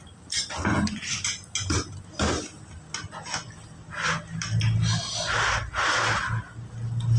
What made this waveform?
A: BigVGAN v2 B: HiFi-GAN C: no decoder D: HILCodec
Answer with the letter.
C